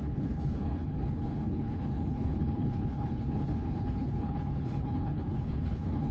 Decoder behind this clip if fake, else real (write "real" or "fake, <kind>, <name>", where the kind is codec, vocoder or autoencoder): fake, codec, HILCodec